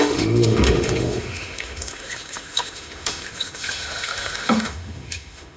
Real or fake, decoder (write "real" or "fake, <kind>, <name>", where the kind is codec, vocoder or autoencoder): fake, autoencoder, DAC-VAE